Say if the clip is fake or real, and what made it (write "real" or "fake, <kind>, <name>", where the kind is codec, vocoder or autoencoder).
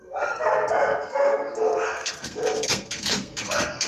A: fake, codec, SNAC